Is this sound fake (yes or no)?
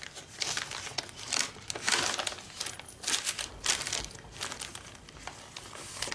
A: no